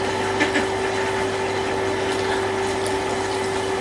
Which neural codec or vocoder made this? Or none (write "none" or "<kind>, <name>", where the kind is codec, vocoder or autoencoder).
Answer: none